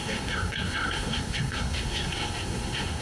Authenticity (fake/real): fake